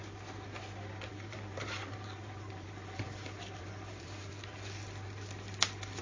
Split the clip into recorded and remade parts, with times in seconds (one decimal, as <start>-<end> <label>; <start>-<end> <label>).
0.0-1.1 recorded; 1.1-4.3 remade; 4.3-6.0 recorded